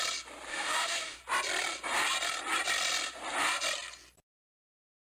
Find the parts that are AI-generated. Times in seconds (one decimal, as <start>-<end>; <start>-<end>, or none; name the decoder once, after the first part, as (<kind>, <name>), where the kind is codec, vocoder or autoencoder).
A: 0.5-1.2 (autoencoder, DAC-VAE)